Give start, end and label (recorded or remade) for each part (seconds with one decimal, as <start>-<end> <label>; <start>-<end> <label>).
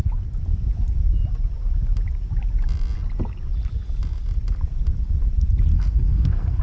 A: 0.0-5.7 recorded; 5.7-6.6 remade